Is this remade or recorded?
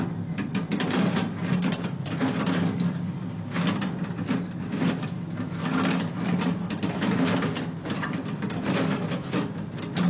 recorded